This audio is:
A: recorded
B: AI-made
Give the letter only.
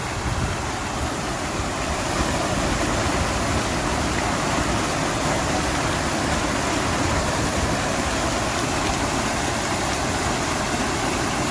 A